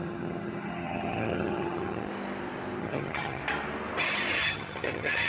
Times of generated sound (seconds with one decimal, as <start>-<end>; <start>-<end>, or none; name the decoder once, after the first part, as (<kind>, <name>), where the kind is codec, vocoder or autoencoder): 0.0-2.1 (vocoder, HiFi-GAN); 2.8-3.4; 4.3-5.3